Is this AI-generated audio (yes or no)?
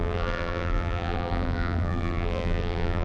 yes